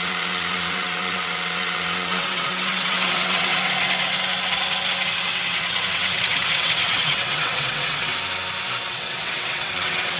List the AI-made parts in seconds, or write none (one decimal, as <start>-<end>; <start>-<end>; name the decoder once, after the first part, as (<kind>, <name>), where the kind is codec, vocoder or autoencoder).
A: 0.0-3.5 (vocoder, WaveNeXt); 5.1-8.1; 8.9-10.2